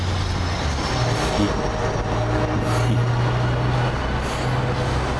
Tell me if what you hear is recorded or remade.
recorded